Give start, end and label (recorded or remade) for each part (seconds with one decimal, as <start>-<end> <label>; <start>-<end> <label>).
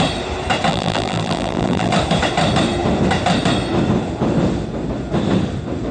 0.0-0.7 recorded; 0.7-1.9 remade; 1.9-5.9 recorded